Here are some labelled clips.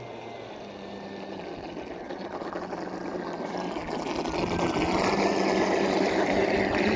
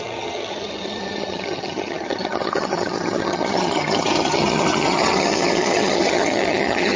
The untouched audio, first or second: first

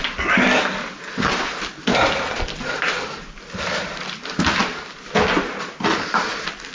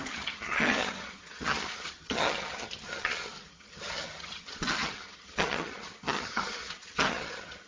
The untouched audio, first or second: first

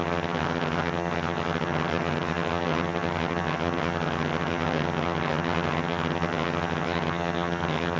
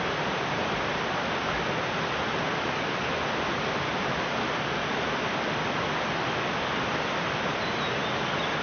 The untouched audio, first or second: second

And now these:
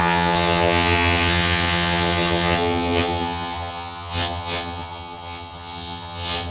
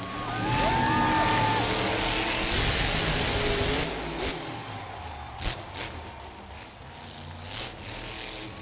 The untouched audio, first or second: second